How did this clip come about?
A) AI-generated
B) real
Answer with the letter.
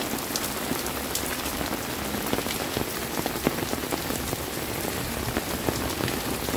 B